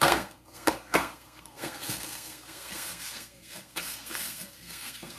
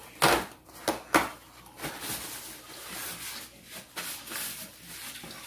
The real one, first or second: second